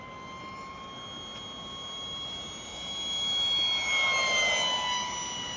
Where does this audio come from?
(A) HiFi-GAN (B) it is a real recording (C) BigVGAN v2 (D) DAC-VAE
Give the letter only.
B